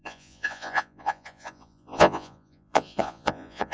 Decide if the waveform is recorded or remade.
remade